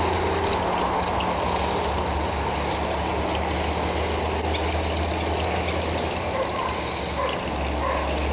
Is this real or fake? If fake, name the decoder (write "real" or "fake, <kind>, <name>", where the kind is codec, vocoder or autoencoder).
real